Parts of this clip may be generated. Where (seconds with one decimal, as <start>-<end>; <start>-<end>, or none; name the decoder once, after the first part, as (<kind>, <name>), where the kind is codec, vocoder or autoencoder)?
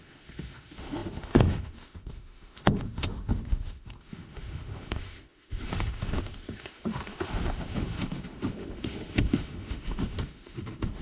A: 0.0-11.0 (autoencoder, DAC-VAE)